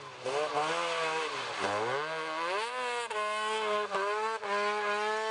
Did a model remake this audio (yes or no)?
no